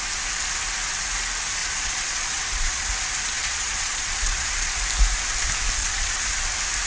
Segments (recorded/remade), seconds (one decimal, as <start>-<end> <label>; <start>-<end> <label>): 0.0-1.6 recorded; 1.6-2.9 remade; 2.9-3.3 recorded; 3.3-4.8 remade; 4.8-5.8 recorded; 5.8-6.5 remade; 6.5-6.9 recorded